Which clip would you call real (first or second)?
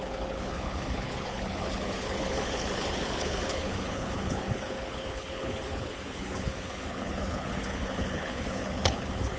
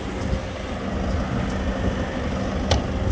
second